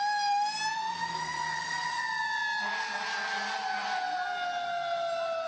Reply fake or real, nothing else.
real